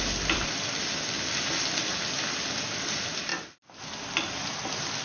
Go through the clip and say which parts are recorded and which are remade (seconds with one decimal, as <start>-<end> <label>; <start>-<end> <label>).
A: 0.0-5.0 recorded